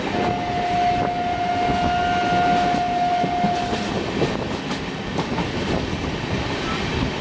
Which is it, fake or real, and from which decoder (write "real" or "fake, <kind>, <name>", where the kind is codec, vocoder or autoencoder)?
real